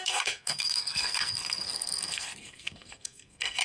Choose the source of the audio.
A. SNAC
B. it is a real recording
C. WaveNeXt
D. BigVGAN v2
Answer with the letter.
A